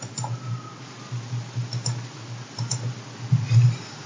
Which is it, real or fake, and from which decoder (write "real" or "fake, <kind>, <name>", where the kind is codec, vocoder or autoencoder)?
real